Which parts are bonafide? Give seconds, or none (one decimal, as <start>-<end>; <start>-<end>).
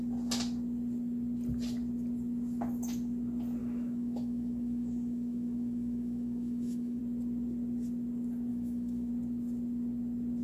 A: 0.0-3.6; 7.0-8.5; 9.1-10.4